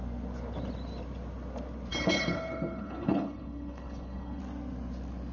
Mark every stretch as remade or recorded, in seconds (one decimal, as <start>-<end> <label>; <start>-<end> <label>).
0.0-1.9 recorded; 1.9-4.4 remade; 4.4-5.3 recorded

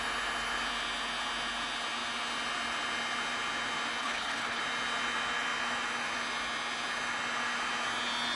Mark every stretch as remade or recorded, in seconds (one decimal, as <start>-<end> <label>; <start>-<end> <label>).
0.0-4.0 recorded; 4.0-4.6 remade; 4.6-8.4 recorded

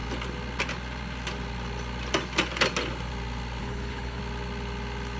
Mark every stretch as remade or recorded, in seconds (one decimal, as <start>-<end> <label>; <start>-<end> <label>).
0.0-3.6 recorded; 3.6-4.2 remade; 4.2-5.2 recorded

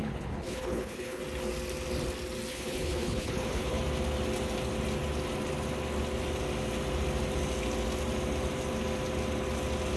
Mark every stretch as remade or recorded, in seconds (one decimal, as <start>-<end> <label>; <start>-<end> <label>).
0.0-1.2 remade; 1.2-2.5 recorded; 2.5-3.8 remade; 3.8-10.0 recorded

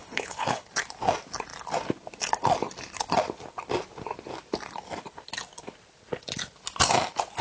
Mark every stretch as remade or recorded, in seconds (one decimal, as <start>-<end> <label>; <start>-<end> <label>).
0.0-0.7 remade; 0.7-7.4 recorded

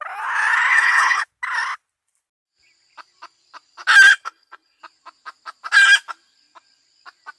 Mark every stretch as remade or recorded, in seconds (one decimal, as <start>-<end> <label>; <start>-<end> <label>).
0.0-0.7 recorded; 0.7-1.2 remade; 1.2-4.1 recorded; 4.1-4.8 remade; 4.8-7.4 recorded

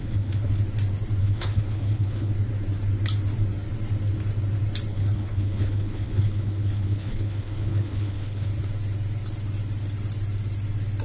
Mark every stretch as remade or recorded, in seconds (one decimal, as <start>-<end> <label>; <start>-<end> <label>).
0.0-0.6 remade; 0.6-1.2 recorded; 1.2-2.3 remade; 2.3-4.9 recorded; 4.9-8.5 remade; 8.5-11.0 recorded

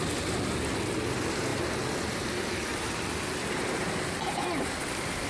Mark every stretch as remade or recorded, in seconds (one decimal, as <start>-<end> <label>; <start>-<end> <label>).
0.0-5.3 recorded